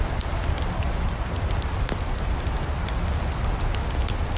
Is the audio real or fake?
real